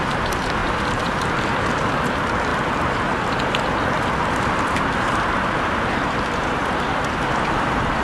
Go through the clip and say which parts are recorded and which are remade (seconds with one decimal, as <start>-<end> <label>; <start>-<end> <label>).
0.0-2.5 remade; 2.5-4.5 recorded; 4.5-8.0 remade